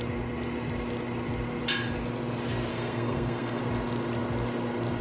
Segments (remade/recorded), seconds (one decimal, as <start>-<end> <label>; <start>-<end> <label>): 0.0-2.7 recorded; 2.7-3.6 remade; 3.6-5.0 recorded